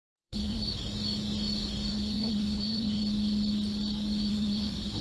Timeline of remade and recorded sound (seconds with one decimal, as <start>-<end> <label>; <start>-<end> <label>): 0.0-0.6 remade; 0.6-1.9 recorded; 1.9-3.0 remade; 3.0-4.3 recorded; 4.3-5.0 remade

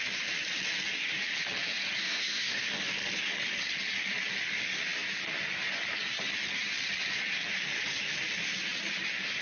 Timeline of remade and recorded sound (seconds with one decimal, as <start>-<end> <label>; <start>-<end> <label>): 0.0-2.0 recorded; 2.0-2.6 remade; 2.6-9.4 recorded

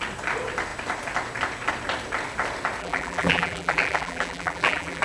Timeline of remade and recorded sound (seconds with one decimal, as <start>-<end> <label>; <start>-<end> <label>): 0.0-2.8 recorded; 2.8-5.0 remade

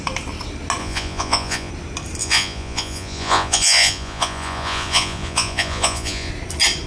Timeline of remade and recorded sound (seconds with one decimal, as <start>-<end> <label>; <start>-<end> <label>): 0.0-0.8 recorded; 0.8-1.7 remade; 1.7-2.2 recorded; 2.2-6.3 remade; 6.3-6.9 recorded

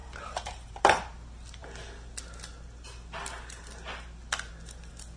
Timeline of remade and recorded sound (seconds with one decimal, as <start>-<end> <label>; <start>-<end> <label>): 0.0-0.8 remade; 0.8-5.2 recorded

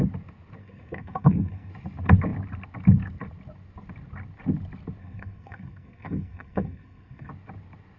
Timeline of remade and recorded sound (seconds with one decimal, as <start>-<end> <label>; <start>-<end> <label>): 0.0-0.6 recorded; 0.6-1.7 remade; 1.7-5.0 recorded; 5.0-7.3 remade; 7.3-8.0 recorded